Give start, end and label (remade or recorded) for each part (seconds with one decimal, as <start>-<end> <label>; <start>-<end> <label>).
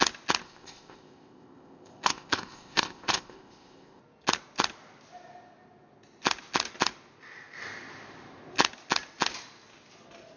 0.0-0.4 recorded; 0.4-4.0 remade; 4.0-10.4 recorded